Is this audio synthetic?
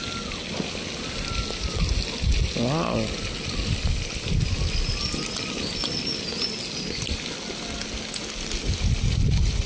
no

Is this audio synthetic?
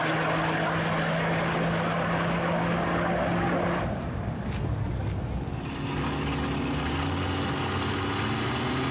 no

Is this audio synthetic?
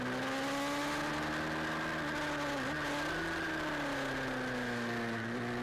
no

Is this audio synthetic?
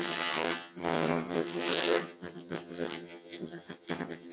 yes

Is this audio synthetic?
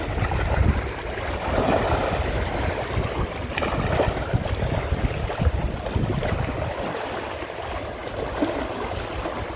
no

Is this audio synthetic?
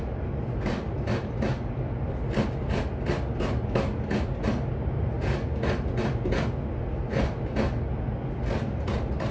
no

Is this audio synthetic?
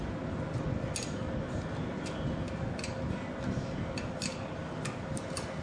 no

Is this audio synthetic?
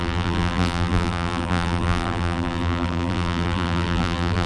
yes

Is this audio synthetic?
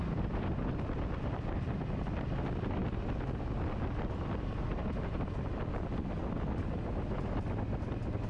no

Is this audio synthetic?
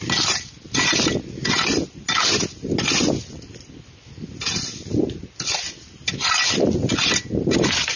no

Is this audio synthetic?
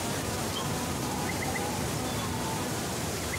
no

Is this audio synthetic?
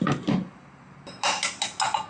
no